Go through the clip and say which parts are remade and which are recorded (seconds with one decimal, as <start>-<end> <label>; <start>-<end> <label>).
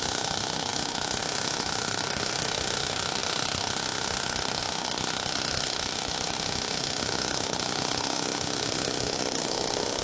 0.0-10.0 remade